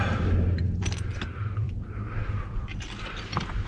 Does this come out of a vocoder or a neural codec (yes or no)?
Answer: yes